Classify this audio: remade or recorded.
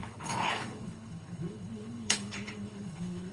remade